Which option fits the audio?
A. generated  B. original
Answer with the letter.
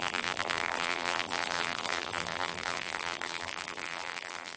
A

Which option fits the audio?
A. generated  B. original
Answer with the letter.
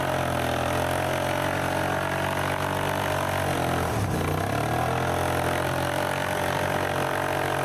B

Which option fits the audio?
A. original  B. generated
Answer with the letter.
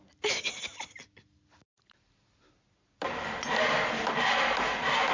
A